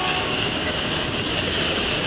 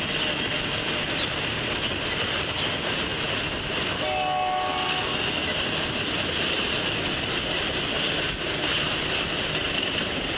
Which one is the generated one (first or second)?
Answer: first